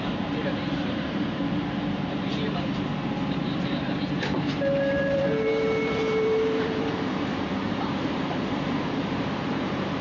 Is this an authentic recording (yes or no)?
no